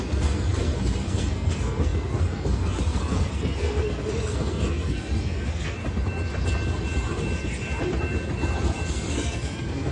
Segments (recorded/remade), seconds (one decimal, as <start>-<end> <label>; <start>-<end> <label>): 0.0-5.8 remade; 5.8-8.9 recorded; 8.9-9.9 remade